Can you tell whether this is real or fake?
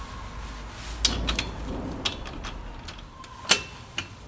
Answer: real